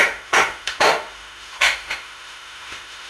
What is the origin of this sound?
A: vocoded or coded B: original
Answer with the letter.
A